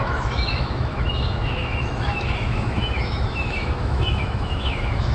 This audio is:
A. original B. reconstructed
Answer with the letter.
B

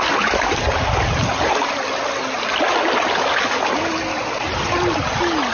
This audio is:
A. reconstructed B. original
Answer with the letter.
B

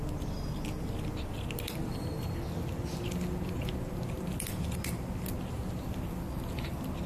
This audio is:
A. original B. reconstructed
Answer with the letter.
A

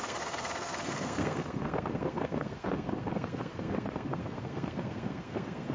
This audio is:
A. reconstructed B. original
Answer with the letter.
A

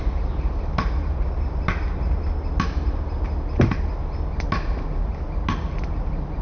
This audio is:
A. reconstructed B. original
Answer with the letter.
B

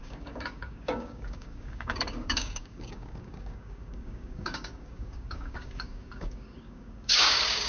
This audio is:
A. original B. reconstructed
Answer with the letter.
B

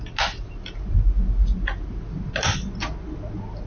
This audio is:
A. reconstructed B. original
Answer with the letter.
B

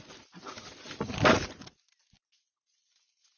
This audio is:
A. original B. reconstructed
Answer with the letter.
A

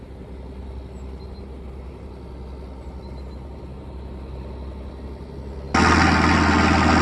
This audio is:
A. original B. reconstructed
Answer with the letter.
A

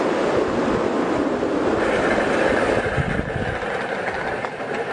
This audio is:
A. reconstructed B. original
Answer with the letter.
B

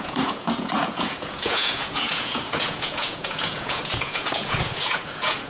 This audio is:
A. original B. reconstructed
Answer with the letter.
B